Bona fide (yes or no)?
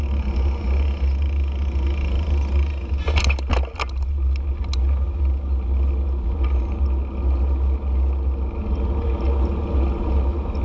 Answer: yes